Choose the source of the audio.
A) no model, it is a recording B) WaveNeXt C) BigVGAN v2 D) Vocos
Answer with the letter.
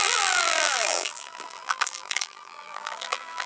C